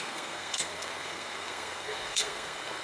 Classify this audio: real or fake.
fake